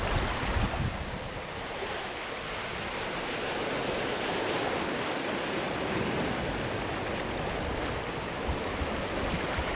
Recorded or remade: recorded